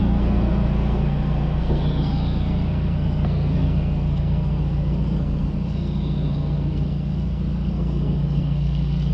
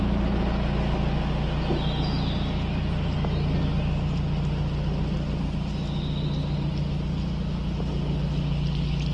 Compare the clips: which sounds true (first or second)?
second